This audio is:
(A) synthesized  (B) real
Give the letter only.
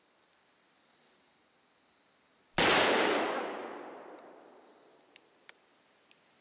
B